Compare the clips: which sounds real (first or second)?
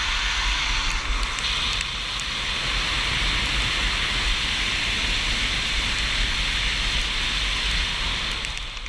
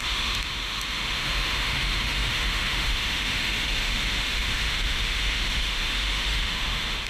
first